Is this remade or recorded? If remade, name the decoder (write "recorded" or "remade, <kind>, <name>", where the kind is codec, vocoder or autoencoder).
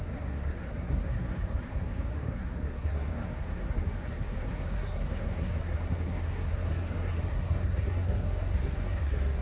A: remade, codec, SNAC